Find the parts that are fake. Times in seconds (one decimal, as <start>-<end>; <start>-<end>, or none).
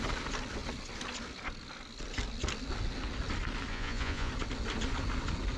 3.7-4.3